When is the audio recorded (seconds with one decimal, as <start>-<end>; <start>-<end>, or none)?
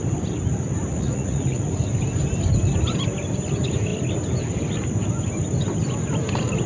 0.0-0.9; 1.7-6.7